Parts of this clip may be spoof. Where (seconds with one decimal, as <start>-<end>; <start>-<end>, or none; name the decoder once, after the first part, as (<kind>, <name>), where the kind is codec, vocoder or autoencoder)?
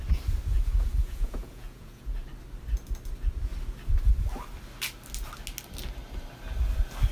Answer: 0.5-2.3 (vocoder, Vocos)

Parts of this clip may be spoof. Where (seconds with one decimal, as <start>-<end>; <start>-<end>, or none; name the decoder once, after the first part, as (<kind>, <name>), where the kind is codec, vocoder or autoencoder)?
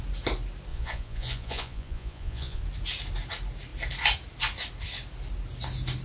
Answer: 0.7-2.6 (vocoder, Vocos)